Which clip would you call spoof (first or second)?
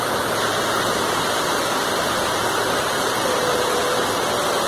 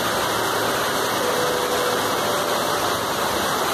first